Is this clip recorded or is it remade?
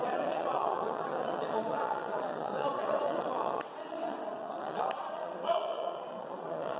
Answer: remade